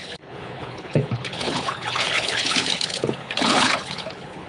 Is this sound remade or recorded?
remade